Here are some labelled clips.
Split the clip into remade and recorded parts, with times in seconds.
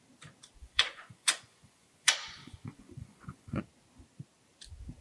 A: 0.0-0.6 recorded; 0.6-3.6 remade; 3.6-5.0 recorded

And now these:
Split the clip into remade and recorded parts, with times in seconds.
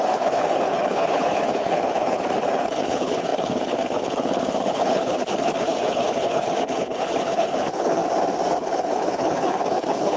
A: 0.0-8.0 remade; 8.0-8.6 recorded; 8.6-10.2 remade